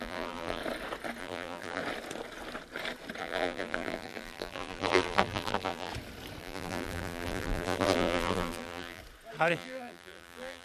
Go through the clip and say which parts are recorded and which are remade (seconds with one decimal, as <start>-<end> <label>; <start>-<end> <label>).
0.0-0.6 remade; 0.6-1.2 recorded; 1.2-1.8 remade; 1.8-3.2 recorded; 3.2-5.9 remade; 5.9-6.4 recorded; 6.4-9.0 remade; 9.0-9.5 recorded; 9.5-10.6 remade